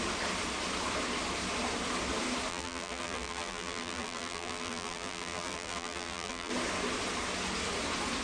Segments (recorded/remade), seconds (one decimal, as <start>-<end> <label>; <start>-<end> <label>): 0.0-2.5 recorded; 2.5-6.5 remade; 6.5-8.2 recorded